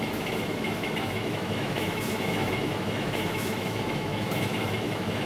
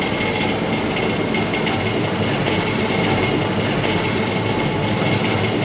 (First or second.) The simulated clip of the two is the first